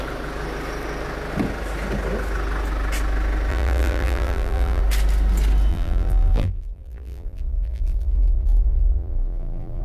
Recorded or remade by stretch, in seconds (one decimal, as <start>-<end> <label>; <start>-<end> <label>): 0.0-3.5 recorded; 3.5-4.8 remade; 4.8-5.7 recorded; 5.7-9.8 remade